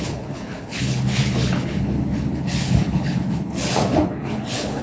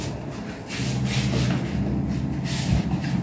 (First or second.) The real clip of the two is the second